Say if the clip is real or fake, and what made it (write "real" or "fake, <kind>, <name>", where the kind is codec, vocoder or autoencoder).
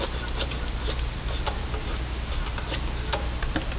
real